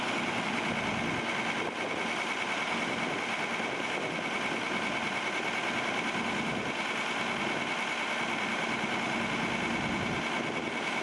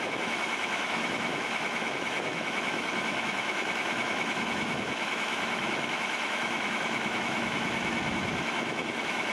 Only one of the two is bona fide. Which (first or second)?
first